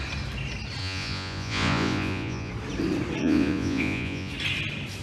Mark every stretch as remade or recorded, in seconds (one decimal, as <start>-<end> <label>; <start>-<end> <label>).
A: 0.0-0.8 recorded; 0.8-2.5 remade; 2.5-3.2 recorded; 3.2-4.3 remade; 4.3-5.0 recorded